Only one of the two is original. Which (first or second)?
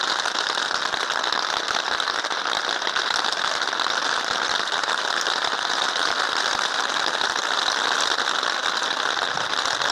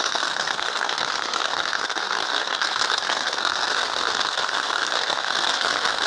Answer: first